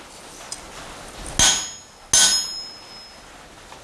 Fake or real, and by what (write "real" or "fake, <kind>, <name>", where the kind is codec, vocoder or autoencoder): real